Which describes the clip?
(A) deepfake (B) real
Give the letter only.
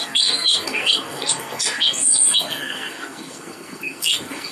A